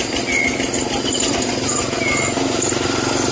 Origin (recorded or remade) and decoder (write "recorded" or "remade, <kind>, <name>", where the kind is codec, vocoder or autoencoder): recorded